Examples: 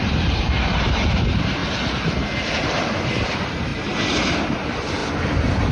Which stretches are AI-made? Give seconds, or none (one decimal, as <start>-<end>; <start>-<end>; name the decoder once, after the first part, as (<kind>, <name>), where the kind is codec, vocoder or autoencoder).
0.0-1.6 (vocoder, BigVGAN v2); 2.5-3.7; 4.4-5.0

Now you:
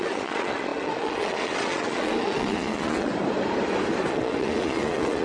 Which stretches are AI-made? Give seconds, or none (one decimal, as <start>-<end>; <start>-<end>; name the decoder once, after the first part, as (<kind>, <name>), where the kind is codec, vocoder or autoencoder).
0.0-3.1 (vocoder, Vocos); 4.1-5.2

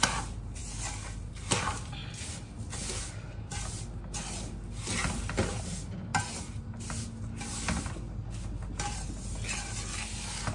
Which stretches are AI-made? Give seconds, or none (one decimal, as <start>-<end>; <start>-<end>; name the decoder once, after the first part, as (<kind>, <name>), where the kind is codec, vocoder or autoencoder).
none